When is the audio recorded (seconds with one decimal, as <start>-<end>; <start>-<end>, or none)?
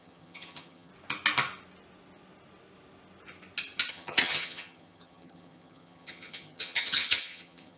0.9-3.9